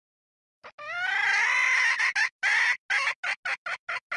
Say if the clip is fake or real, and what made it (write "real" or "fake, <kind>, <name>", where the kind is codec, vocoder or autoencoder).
real